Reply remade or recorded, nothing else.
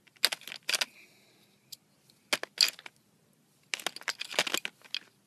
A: recorded